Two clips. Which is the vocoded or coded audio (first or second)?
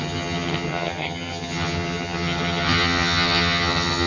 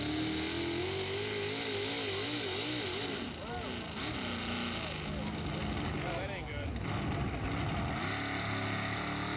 first